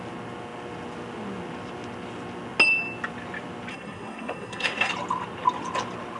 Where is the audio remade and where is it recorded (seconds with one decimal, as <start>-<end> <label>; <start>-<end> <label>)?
0.0-3.7 recorded; 3.7-4.9 remade; 4.9-6.2 recorded